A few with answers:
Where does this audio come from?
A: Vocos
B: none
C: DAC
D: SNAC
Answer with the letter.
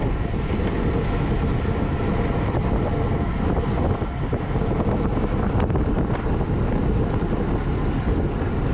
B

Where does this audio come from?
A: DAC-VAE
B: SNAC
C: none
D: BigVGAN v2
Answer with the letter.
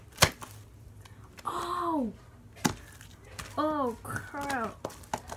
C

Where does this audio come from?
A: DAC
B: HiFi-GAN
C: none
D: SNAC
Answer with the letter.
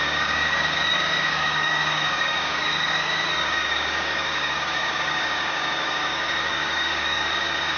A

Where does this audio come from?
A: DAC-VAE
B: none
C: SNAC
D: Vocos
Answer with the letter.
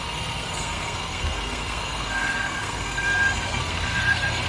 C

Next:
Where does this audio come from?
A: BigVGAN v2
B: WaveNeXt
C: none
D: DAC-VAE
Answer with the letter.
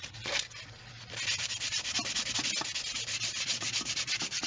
A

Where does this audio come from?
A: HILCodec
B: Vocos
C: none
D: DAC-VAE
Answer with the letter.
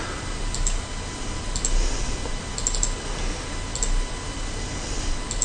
C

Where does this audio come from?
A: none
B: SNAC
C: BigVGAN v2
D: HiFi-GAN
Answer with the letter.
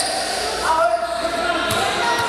A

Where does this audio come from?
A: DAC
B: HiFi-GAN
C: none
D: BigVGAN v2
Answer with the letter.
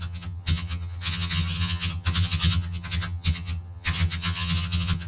B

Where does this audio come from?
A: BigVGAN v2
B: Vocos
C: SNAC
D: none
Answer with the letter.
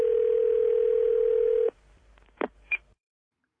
A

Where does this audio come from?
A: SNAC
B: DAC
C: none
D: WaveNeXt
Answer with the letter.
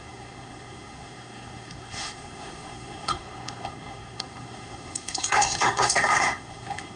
A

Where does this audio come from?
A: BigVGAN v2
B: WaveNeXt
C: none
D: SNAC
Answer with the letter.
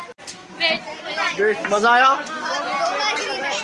C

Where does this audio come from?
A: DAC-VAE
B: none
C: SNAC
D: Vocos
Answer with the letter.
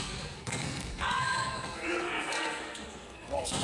C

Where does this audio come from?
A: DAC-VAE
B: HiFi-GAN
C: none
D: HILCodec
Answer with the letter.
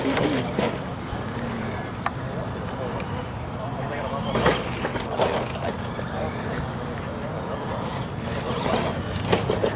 C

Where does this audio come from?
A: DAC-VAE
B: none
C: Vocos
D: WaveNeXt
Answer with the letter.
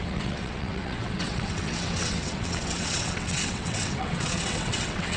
D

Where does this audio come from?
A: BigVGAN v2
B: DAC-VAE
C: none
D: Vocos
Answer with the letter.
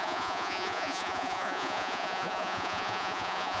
D